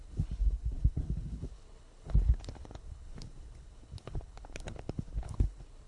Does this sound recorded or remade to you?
remade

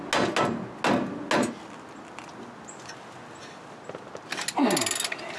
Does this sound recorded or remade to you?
recorded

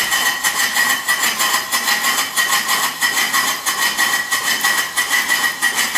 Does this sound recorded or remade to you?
recorded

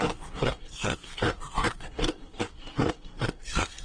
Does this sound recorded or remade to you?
remade